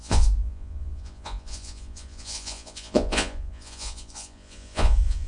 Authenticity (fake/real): fake